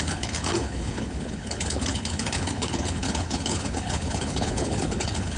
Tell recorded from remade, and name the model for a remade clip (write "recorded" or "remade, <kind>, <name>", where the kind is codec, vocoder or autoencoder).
remade, codec, HILCodec